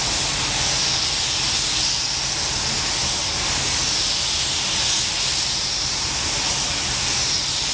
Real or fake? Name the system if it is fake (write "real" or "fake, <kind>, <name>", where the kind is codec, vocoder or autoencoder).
real